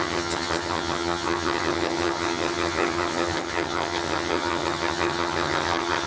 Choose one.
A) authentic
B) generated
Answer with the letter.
B